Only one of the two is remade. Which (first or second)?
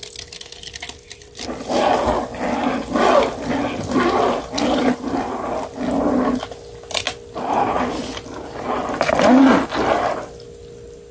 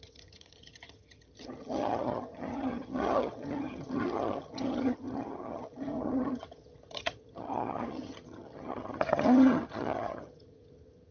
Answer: second